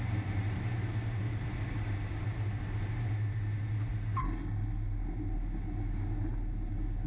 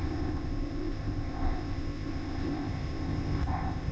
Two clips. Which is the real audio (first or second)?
first